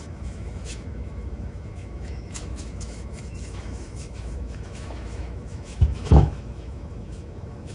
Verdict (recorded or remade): remade